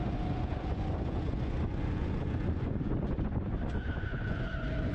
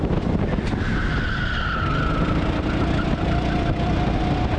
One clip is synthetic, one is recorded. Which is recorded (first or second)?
second